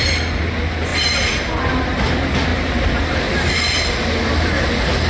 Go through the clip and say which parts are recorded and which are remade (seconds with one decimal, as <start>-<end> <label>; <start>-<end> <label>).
0.0-5.1 recorded